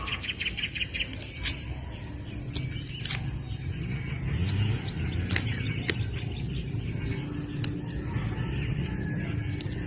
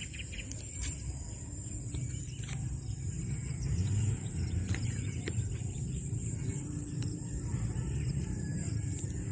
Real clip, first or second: first